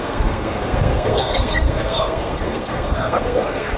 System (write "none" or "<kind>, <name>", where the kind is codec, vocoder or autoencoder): codec, SNAC